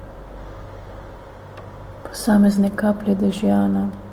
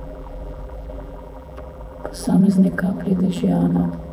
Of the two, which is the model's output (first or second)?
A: second